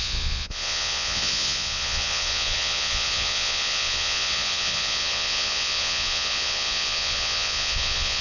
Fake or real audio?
fake